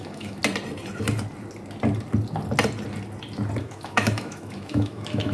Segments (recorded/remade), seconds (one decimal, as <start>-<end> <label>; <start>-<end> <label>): 0.0-0.4 remade; 0.4-3.6 recorded; 3.6-5.3 remade